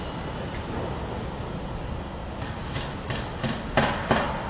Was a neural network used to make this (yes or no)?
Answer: no